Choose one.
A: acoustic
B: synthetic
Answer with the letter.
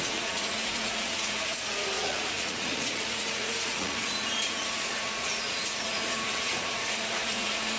B